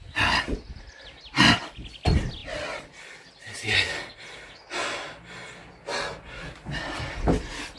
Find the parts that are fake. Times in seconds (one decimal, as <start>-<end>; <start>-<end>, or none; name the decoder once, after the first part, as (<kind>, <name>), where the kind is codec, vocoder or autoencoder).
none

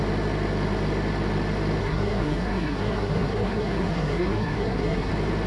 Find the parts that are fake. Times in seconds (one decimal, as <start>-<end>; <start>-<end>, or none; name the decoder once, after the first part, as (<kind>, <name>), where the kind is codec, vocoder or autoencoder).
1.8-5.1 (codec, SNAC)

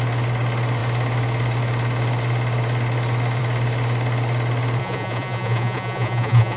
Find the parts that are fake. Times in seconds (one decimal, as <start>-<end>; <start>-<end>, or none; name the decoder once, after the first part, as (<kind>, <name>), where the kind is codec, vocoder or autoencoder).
4.8-6.6 (vocoder, Vocos)

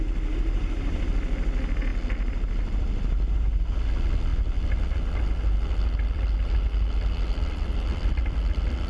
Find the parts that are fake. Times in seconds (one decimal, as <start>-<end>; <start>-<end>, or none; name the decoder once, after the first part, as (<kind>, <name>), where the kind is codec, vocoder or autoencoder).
none

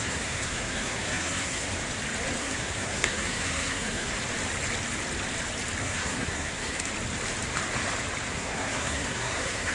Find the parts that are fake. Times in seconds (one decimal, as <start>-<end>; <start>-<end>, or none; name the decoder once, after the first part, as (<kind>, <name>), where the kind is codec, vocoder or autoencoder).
0.0-1.7 (codec, SNAC); 2.4-4.1; 5.8-6.9; 8.3-9.7

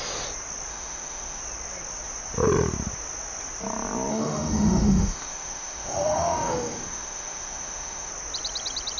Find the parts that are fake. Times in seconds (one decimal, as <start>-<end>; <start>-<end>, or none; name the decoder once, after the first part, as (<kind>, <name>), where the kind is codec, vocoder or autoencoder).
0.7-1.4 (autoencoder, DAC-VAE); 4.1-8.1

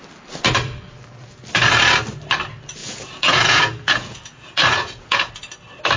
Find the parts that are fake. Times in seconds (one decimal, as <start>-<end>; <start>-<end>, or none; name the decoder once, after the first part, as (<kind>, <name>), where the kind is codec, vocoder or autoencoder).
2.8-5.3 (vocoder, Vocos)

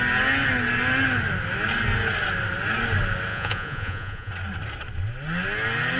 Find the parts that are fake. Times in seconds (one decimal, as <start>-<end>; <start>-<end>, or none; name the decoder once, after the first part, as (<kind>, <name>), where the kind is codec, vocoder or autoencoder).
3.3-4.3 (vocoder, Vocos)